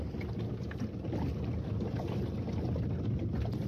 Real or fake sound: real